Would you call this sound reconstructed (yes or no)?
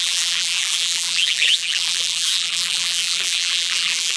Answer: yes